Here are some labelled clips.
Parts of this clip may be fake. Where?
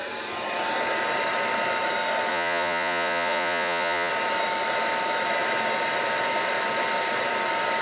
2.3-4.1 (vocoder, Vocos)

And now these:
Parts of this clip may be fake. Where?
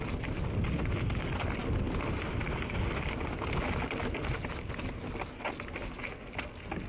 none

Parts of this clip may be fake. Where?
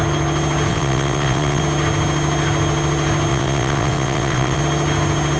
0.7-1.6 (vocoder, WaveNeXt); 3.3-4.6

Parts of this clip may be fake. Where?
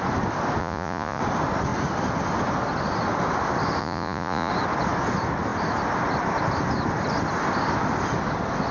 0.6-1.2 (vocoder, Vocos); 3.8-4.5